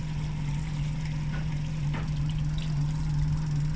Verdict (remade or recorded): recorded